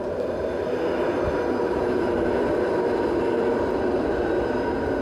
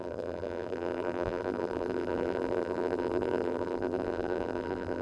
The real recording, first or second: first